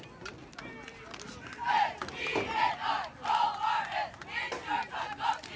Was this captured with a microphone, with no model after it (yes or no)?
yes